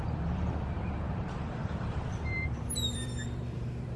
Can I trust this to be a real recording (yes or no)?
no